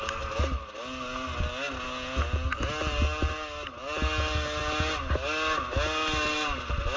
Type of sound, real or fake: real